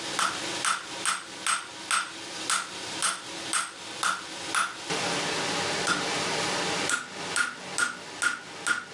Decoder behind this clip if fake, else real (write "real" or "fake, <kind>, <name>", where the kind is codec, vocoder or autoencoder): real